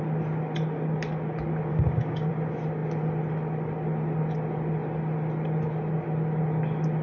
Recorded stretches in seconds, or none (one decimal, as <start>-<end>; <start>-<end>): 0.0-1.7; 2.3-7.0